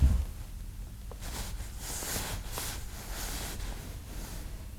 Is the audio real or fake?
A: real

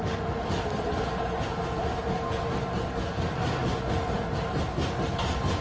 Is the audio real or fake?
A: real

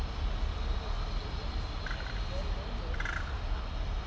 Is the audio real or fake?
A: real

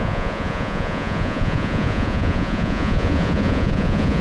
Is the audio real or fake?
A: fake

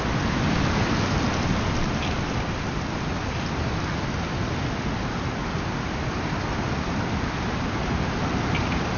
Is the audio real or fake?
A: real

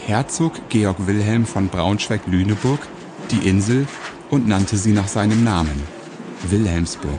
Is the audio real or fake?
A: fake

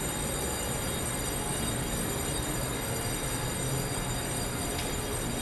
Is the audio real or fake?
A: real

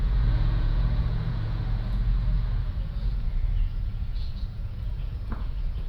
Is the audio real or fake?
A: fake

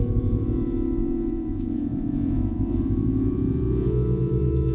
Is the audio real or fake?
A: fake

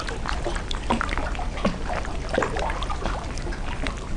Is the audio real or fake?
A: real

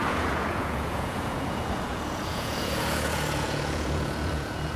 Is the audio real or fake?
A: fake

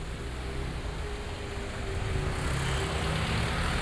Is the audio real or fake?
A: real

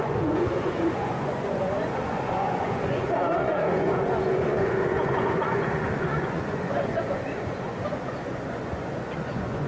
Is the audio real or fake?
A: fake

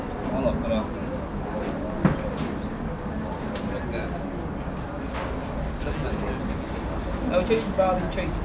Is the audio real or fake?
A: real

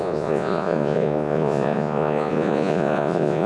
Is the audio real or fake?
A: fake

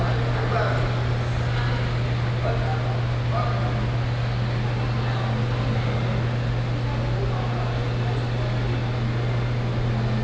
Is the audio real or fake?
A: real